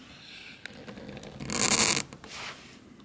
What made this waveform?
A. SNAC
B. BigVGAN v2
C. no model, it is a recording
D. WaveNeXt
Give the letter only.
C